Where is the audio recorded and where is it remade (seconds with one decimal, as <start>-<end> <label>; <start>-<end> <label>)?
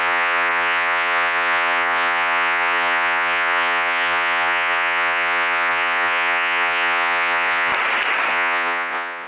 0.0-7.7 remade; 7.7-8.3 recorded; 8.3-9.3 remade